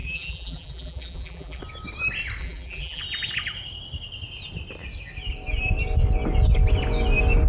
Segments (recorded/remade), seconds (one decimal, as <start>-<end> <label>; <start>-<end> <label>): 0.0-1.6 remade; 1.6-2.4 recorded; 2.4-3.0 remade; 3.0-7.5 recorded